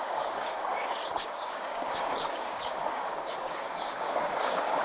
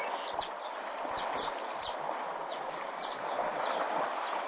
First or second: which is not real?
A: first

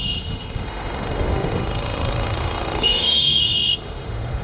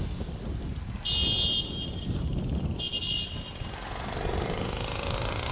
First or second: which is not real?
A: first